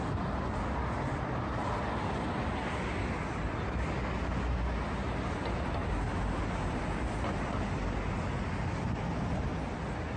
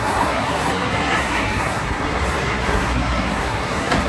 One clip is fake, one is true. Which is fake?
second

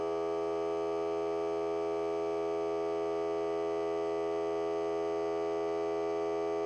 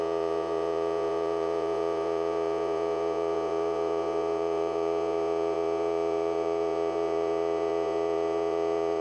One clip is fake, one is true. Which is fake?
second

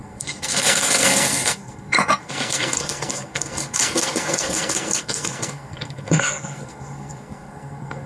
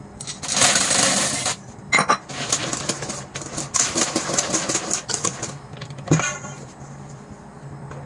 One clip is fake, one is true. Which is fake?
first